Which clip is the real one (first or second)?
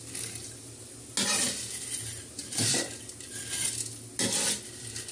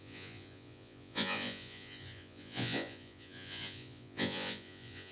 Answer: first